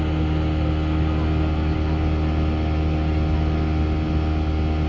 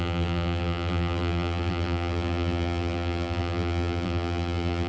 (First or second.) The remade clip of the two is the second